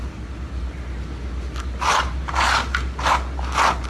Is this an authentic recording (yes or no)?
yes